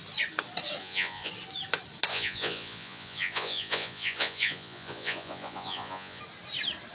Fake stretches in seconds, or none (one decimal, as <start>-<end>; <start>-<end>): 0.8-1.3; 2.1-6.2

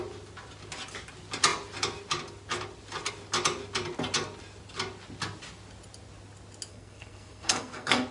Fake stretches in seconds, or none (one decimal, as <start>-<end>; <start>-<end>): 6.7-8.1

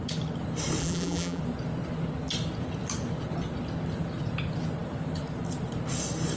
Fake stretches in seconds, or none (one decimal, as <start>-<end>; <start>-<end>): 0.8-1.4